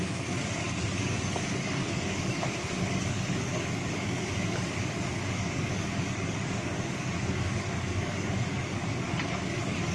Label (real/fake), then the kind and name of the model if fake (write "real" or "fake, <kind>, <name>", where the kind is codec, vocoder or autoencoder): fake, codec, DAC